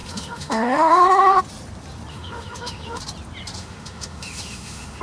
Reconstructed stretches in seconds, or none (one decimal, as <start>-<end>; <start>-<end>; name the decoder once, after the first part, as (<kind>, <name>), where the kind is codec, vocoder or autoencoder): 0.0-1.4 (autoencoder, DAC-VAE); 2.1-3.0; 3.6-5.0